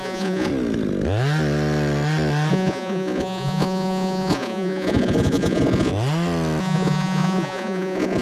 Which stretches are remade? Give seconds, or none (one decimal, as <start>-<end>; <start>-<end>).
0.0-0.5; 2.5-5.9; 6.6-8.2